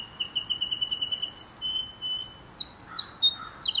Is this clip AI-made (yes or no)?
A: no